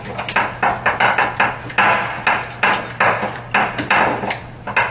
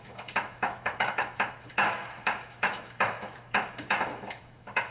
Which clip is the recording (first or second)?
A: first